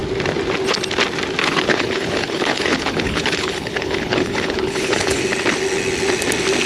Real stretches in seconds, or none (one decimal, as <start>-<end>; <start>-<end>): 0.0-1.4; 5.2-6.7